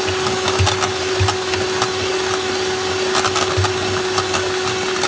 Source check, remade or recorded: recorded